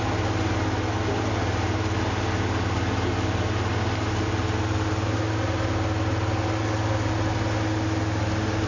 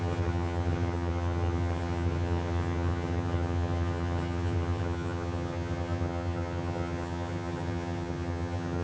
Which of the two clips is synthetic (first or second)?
second